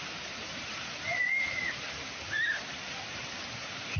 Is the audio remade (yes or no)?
no